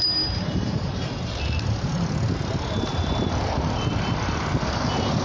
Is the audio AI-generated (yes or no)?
no